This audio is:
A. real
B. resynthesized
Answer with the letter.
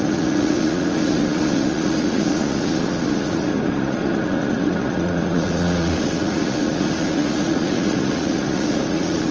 B